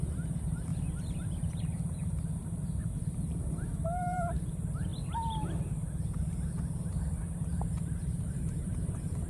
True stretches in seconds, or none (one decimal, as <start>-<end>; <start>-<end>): 0.7-1.6; 4.9-7.8